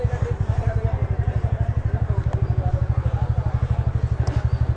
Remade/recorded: recorded